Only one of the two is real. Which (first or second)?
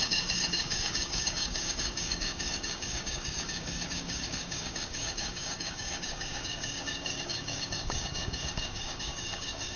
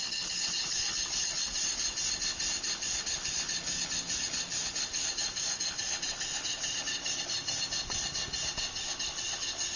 second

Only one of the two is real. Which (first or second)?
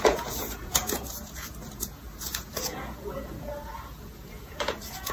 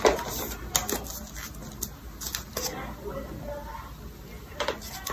second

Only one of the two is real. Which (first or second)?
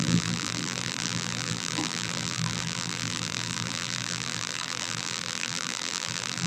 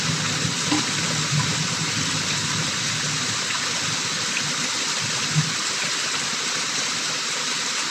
second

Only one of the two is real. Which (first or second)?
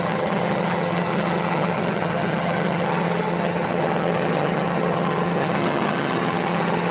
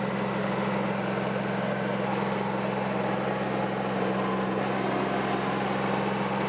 second